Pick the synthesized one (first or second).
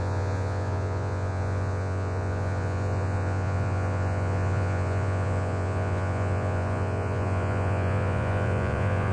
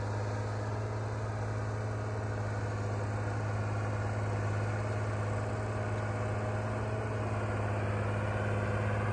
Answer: first